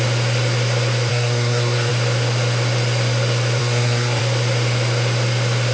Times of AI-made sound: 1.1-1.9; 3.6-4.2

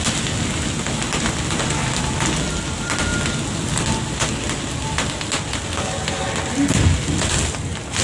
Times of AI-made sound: none

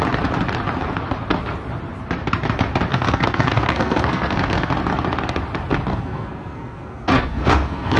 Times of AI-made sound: 2.9-4.7; 5.9-8.0

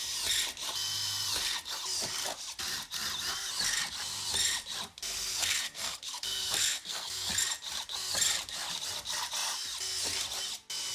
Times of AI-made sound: 5.3-7.3

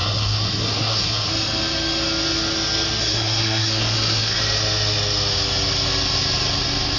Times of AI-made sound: 0.0-1.3; 3.0-4.4

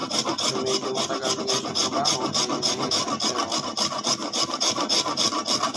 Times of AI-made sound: none